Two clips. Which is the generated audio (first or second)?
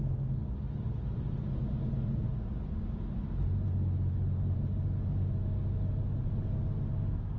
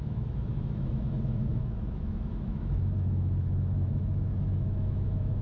second